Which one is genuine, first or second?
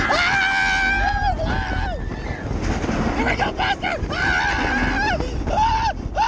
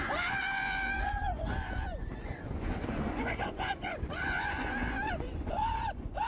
first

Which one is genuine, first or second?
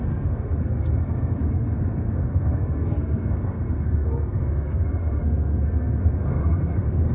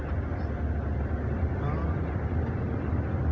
second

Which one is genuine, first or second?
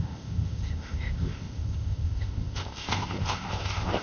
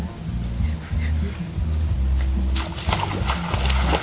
second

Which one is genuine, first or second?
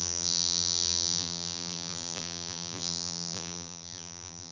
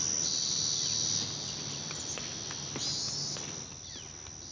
second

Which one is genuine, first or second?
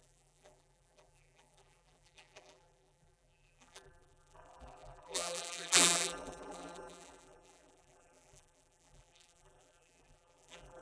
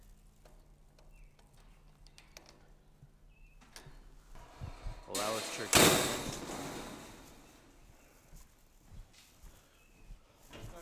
second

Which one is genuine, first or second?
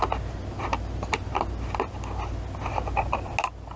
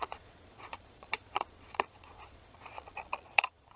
first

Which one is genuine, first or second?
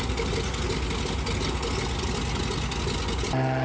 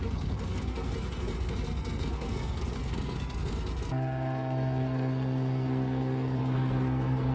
first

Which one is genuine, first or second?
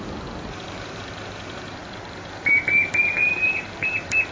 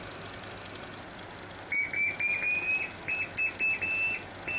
second